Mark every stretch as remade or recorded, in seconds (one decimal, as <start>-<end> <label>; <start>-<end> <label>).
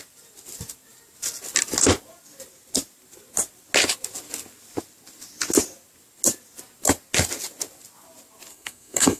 0.0-8.5 recorded; 8.5-9.2 remade